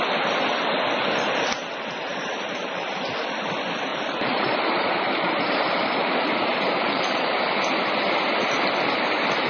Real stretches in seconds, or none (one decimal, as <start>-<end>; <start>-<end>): 0.0-2.1; 3.1-3.9; 7.7-9.5